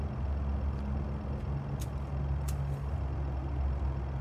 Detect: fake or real real